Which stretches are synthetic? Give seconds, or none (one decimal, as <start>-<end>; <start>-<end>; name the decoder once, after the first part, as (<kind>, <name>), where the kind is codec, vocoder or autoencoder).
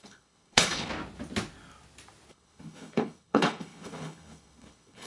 0.0-0.9 (codec, HILCodec); 2.3-5.1